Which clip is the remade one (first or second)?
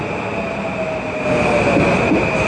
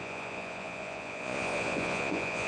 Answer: second